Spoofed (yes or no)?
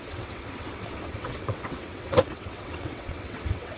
yes